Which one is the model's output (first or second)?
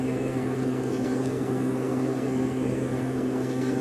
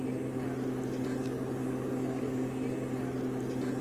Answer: first